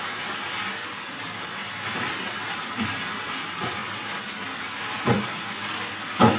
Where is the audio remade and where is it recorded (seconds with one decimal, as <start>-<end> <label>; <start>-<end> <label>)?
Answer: 0.0-1.6 recorded; 1.6-2.7 remade; 2.7-3.8 recorded; 3.8-4.6 remade; 4.6-6.4 recorded